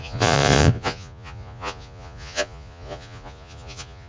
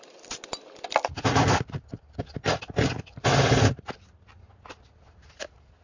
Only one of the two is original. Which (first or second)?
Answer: second